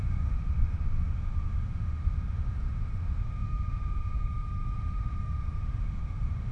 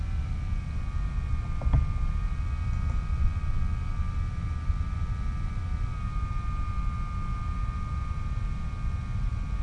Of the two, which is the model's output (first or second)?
first